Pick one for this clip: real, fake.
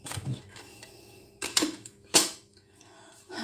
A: fake